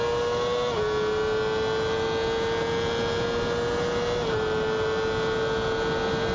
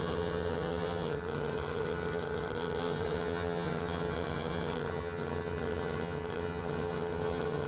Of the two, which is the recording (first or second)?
first